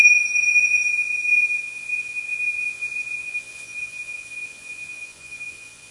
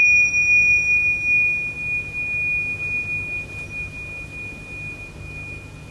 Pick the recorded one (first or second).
second